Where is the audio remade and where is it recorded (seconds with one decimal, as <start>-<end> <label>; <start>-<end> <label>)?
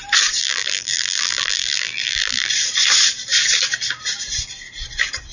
0.0-0.4 recorded; 0.4-2.5 remade; 2.5-5.3 recorded